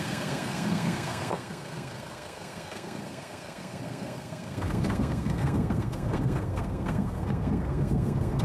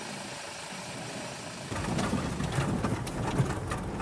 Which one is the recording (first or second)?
second